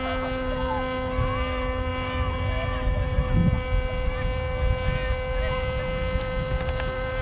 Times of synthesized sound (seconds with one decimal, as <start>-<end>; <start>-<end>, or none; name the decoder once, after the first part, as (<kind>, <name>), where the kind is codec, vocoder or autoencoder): none